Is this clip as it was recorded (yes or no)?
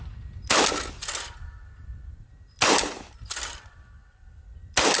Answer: yes